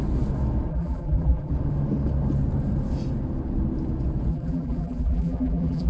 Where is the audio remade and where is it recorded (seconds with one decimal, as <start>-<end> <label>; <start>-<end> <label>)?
0.0-0.7 recorded; 0.7-1.5 remade; 1.5-4.3 recorded; 4.3-5.9 remade